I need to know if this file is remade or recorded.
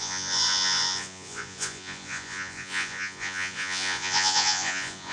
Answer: remade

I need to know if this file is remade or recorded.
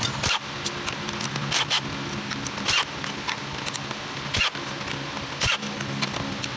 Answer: recorded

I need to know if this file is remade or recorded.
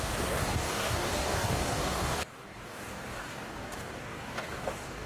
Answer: remade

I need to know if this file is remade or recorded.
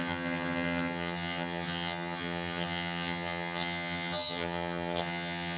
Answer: remade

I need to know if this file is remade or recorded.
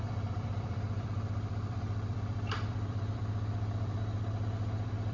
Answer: remade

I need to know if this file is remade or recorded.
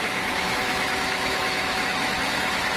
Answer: remade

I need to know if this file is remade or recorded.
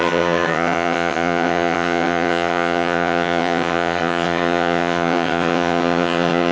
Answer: remade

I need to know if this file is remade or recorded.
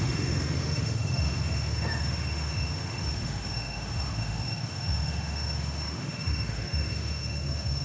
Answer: remade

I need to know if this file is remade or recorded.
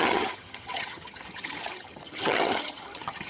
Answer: remade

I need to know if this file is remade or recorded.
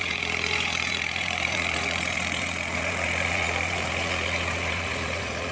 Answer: remade